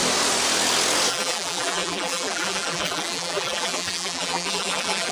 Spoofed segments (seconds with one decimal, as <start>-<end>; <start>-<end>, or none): 1.1-5.1